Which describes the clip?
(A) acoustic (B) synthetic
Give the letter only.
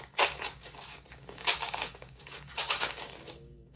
B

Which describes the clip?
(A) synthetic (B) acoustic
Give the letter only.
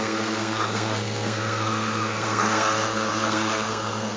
A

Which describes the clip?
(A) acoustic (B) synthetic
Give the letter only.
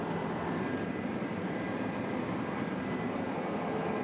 A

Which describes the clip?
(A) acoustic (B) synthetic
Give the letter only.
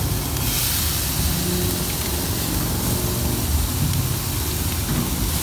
A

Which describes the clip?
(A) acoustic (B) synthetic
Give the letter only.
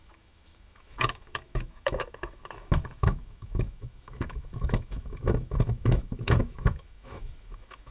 B